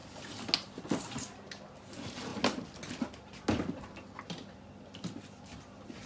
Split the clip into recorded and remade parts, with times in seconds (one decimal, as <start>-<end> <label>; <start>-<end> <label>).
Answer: 0.0-6.1 recorded